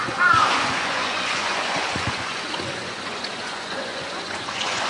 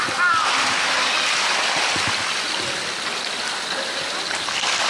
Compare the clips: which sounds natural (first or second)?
second